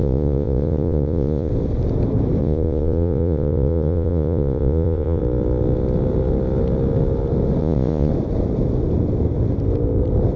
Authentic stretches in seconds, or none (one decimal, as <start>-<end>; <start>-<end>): 1.5-2.4; 5.2-7.6; 8.1-10.4